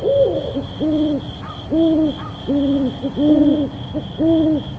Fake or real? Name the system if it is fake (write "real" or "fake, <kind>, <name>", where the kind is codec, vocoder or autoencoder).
real